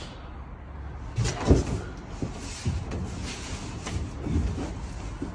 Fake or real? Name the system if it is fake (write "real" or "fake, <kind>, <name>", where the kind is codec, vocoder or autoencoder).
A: real